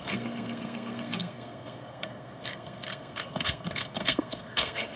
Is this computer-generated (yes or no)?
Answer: yes